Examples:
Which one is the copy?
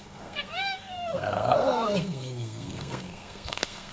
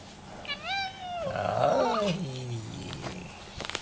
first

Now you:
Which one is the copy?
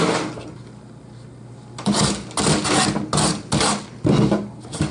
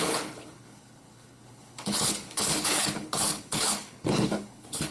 second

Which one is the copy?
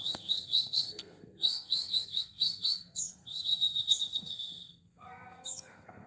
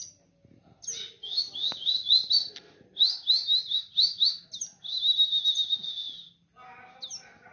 first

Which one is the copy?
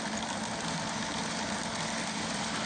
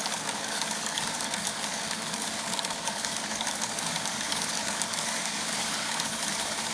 second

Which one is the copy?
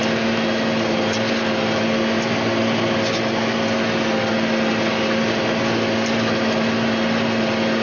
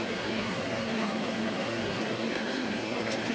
second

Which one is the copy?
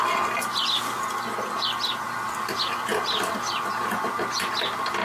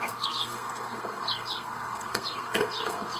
second